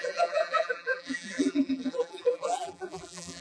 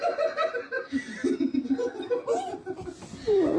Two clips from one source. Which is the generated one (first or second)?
first